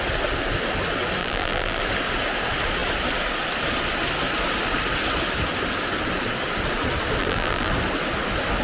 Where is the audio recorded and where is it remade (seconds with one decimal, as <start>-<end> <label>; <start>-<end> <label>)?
0.0-1.2 recorded; 1.2-1.8 remade; 1.8-7.2 recorded; 7.2-7.7 remade; 7.7-8.6 recorded